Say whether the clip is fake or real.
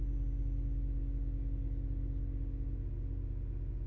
real